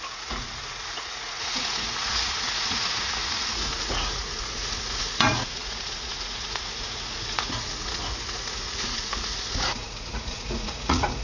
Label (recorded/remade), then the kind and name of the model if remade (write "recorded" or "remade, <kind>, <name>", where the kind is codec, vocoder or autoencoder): remade, vocoder, Vocos